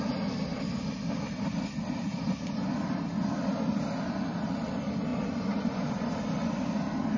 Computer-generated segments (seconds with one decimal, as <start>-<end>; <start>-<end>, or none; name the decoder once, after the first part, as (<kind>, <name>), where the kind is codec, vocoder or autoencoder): 5.1-6.1 (vocoder, BigVGAN v2)